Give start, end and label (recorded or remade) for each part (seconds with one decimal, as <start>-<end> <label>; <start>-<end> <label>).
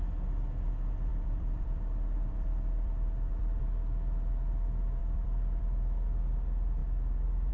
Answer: 0.0-1.1 recorded; 1.1-3.6 remade; 3.6-5.0 recorded; 5.0-5.6 remade; 5.6-7.5 recorded